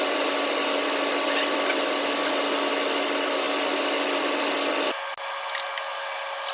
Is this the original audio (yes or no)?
yes